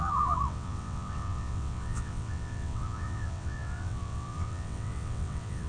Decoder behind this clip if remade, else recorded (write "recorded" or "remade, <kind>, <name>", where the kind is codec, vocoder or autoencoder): remade, vocoder, WaveNeXt